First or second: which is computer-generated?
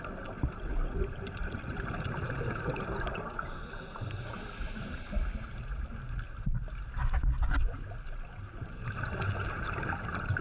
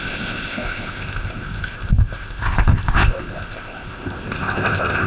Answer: second